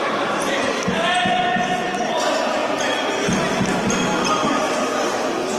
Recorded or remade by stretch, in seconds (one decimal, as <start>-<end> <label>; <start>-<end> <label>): 0.0-5.6 recorded